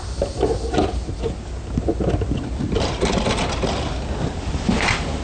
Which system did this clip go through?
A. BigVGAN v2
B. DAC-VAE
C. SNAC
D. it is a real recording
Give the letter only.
D